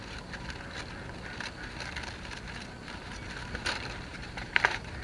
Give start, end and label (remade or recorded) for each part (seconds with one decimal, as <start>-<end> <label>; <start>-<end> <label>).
0.0-4.1 recorded; 4.1-5.0 remade